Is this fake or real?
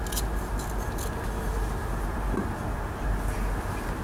real